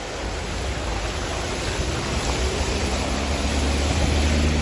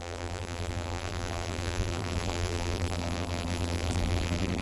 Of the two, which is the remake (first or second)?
second